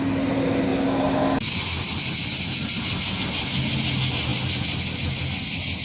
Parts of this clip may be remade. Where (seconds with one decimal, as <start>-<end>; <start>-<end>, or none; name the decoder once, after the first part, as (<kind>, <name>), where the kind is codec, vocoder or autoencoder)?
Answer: none